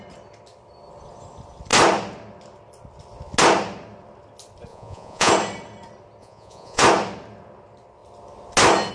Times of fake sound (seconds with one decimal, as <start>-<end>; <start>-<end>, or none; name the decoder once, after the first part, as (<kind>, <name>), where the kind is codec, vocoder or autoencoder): 4.7-5.3 (vocoder, Vocos); 6.2-6.8